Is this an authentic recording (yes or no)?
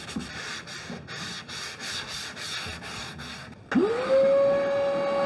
yes